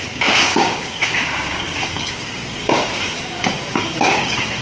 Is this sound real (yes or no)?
no